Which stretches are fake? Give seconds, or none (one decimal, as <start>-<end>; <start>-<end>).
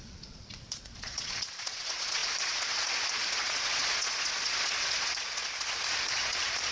0.0-6.7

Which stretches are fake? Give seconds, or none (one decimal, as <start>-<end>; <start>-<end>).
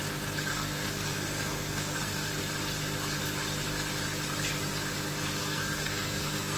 0.5-2.4; 5.4-6.6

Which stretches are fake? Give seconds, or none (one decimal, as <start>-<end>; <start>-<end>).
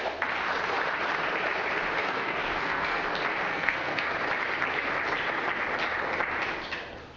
2.0-3.0; 3.5-4.1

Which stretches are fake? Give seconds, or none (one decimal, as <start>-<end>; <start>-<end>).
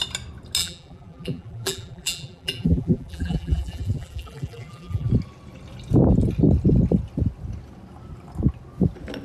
0.6-5.1